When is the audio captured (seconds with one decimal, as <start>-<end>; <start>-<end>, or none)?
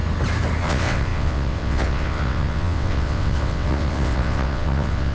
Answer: 0.0-0.6